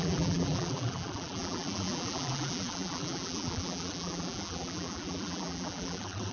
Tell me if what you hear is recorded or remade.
remade